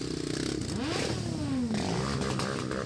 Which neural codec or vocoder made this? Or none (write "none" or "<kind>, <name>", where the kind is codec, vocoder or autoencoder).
none